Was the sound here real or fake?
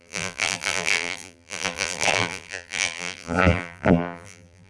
fake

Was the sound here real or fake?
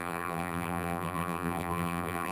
fake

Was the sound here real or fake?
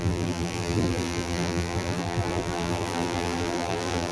fake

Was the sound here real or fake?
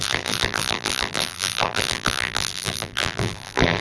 fake